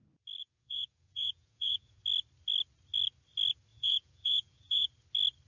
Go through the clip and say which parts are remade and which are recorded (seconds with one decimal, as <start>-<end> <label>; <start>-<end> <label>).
0.0-0.4 recorded; 0.4-2.0 remade; 2.0-3.7 recorded; 3.7-4.9 remade; 4.9-5.5 recorded